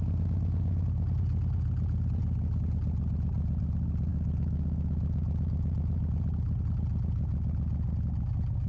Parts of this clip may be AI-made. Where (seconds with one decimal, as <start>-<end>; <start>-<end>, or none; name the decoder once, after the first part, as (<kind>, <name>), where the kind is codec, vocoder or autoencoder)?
4.1-6.1 (autoencoder, DAC-VAE)